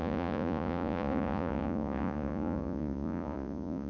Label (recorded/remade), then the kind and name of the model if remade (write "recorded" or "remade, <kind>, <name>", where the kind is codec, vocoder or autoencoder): remade, vocoder, Vocos